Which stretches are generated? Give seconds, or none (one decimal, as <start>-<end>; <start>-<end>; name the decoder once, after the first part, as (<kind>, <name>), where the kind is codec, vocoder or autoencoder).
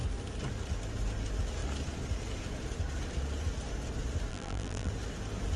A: 4.3-4.9 (vocoder, BigVGAN v2)